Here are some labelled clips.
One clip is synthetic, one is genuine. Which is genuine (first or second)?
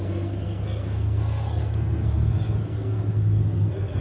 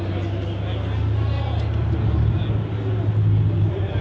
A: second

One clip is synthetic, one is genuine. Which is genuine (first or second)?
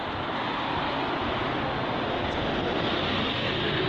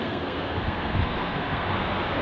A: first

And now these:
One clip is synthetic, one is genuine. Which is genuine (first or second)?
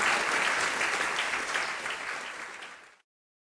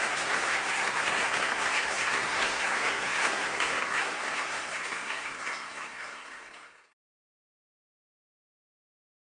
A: first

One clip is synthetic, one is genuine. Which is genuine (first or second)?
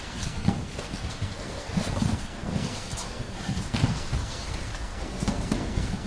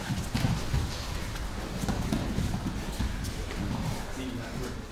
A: second